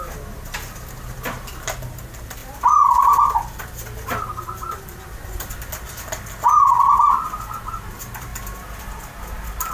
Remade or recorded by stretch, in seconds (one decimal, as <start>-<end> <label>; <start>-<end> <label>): 0.0-9.7 recorded

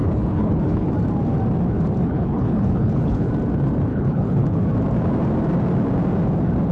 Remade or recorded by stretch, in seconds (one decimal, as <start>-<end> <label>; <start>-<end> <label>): 0.0-0.9 remade; 0.9-2.0 recorded; 2.0-3.3 remade; 3.3-3.9 recorded; 3.9-4.6 remade; 4.6-6.7 recorded